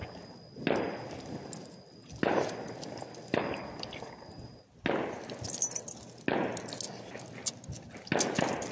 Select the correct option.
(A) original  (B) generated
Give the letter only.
A